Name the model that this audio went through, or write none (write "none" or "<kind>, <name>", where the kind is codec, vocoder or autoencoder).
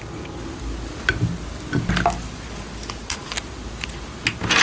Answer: none